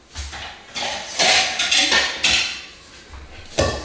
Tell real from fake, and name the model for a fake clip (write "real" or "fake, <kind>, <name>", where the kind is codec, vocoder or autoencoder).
real